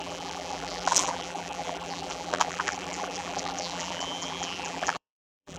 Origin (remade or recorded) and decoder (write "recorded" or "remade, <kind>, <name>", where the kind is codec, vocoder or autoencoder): remade, vocoder, BigVGAN v2